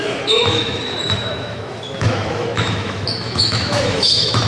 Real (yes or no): no